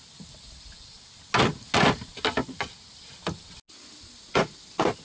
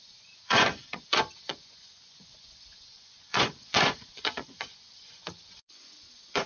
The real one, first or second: first